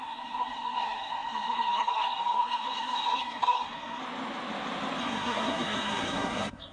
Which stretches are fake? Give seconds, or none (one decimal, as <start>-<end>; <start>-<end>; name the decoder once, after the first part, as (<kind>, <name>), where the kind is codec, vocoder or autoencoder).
0.0-4.0 (codec, SNAC); 5.0-6.7